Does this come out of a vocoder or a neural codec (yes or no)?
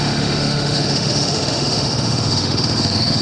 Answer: yes